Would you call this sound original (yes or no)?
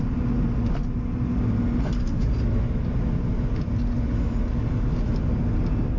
yes